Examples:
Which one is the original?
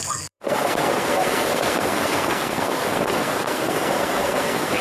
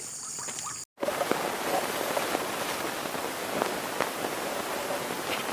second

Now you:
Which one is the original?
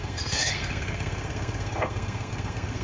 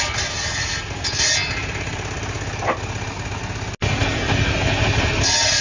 second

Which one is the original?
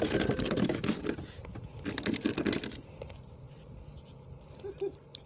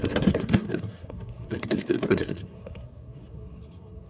first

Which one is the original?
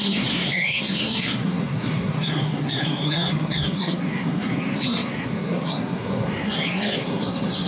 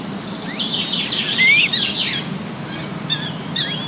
second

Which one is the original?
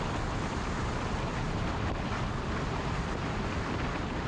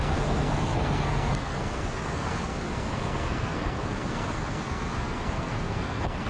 first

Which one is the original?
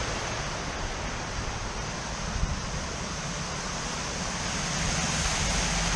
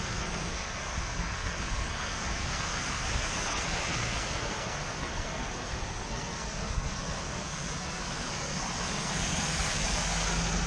first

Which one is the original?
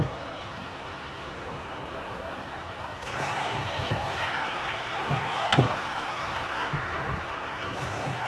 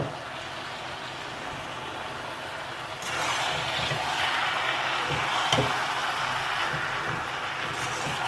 second